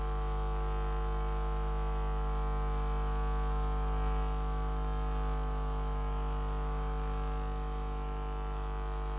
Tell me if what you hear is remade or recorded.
remade